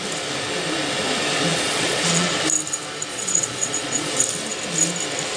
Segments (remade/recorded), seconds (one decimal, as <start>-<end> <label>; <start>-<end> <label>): 0.0-1.5 recorded; 1.5-2.3 remade; 2.3-3.1 recorded; 3.1-4.1 remade; 4.1-5.4 recorded